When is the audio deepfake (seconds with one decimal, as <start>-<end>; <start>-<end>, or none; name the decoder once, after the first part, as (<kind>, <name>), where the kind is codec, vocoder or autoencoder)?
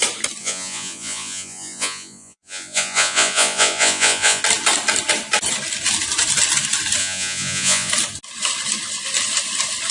0.4-4.4 (vocoder, Vocos); 7.0-7.9